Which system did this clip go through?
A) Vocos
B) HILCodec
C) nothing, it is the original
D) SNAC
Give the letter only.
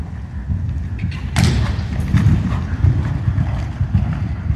C